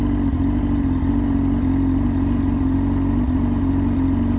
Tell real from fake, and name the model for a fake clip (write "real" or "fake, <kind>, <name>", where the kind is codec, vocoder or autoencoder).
real